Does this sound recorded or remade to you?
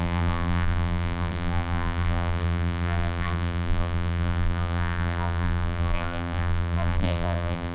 remade